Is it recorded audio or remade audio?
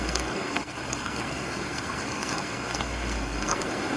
remade